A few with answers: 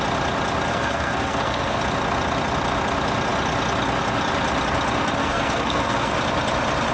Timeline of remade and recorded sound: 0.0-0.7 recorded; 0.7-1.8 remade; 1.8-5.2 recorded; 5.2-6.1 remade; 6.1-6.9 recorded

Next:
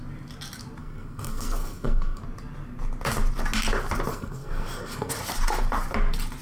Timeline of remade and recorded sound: 0.0-0.8 recorded; 0.8-2.2 remade; 2.2-4.1 recorded; 4.1-5.1 remade; 5.1-6.4 recorded